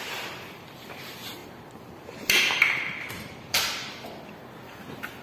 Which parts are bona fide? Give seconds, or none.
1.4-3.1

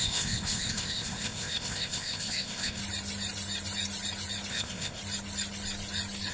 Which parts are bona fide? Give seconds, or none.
2.8-4.5; 5.0-6.3

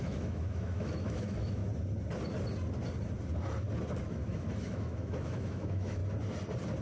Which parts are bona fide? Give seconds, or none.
1.6-4.1; 6.0-6.8